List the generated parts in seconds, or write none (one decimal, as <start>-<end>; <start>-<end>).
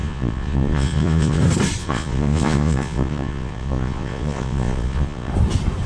0.0-1.4; 1.8-5.3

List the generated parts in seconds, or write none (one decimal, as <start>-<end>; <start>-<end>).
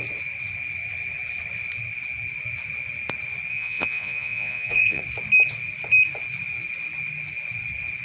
3.5-5.0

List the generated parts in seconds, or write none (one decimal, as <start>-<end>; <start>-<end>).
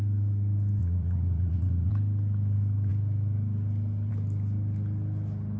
0.8-1.9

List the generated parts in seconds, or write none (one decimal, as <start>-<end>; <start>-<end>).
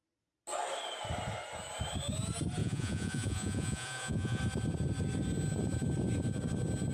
2.6-4.4